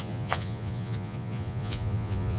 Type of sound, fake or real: fake